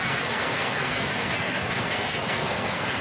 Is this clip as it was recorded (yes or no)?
no